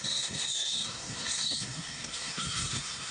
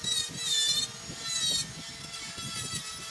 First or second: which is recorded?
second